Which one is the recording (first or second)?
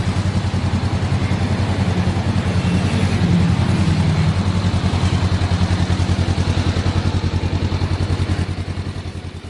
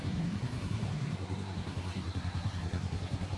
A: first